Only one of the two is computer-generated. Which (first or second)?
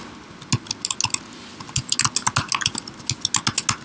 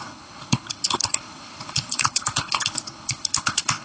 second